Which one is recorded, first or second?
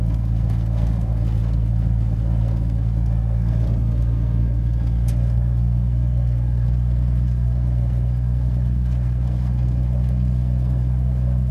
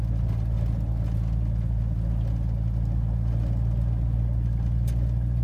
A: second